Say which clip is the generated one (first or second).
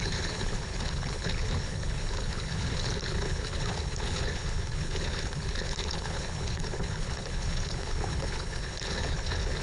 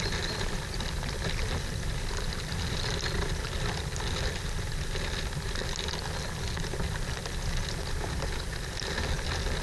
first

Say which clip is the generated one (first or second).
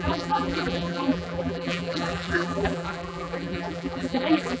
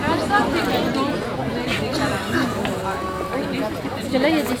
first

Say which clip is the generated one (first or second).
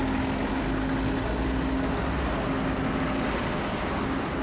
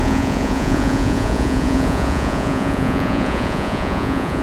second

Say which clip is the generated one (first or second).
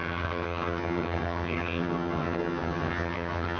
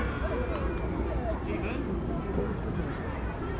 first